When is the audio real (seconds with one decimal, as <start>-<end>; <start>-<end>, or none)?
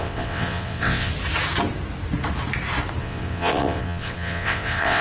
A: 1.1-3.0